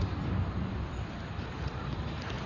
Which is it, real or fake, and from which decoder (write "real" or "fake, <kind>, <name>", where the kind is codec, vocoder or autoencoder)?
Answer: fake, vocoder, BigVGAN v2